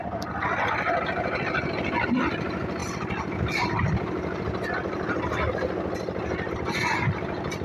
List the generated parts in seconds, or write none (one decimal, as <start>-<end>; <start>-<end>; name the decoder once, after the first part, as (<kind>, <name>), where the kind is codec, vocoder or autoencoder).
none